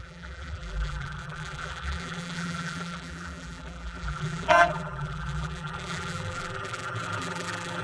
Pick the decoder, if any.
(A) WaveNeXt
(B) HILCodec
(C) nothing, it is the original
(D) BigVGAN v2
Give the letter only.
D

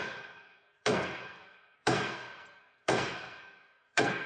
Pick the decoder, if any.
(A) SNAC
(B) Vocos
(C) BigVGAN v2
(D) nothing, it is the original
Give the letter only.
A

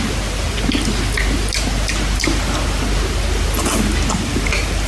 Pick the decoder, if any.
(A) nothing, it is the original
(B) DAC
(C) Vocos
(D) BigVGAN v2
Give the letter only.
A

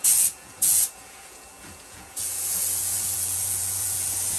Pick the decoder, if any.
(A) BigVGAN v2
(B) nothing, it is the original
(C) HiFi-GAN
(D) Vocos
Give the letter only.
D